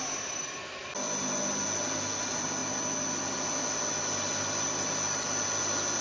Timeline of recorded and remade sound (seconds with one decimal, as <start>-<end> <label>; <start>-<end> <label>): 0.0-6.0 recorded